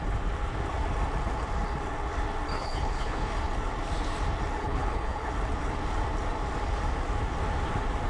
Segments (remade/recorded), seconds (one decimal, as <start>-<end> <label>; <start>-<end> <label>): 0.0-2.5 recorded; 2.5-3.3 remade; 3.3-4.6 recorded; 4.6-5.3 remade; 5.3-8.1 recorded